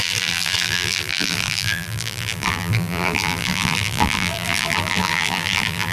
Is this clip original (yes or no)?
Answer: no